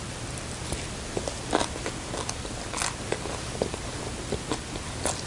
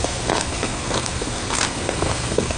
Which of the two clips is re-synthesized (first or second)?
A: second